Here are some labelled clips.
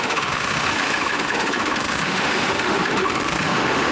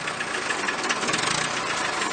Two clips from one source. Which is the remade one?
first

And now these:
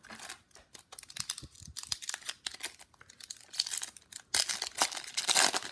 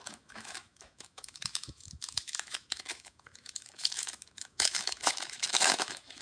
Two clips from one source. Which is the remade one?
second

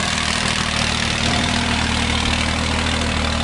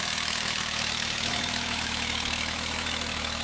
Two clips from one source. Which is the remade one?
second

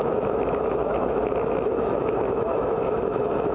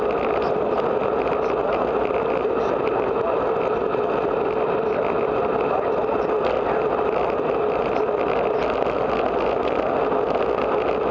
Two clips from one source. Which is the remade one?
first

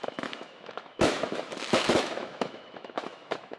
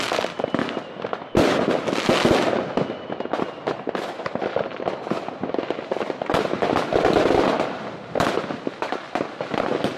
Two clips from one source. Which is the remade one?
first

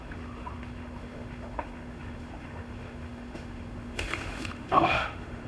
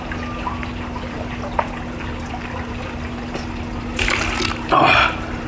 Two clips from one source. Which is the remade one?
first